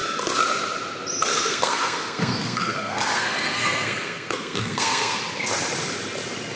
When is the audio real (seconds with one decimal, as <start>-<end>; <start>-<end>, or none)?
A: 0.0-1.3; 5.2-6.6